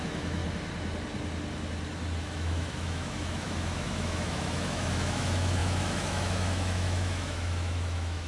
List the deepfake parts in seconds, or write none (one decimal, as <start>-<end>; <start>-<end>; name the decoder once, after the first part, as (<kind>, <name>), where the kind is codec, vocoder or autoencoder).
0.0-0.4 (autoencoder, DAC-VAE); 2.2-8.3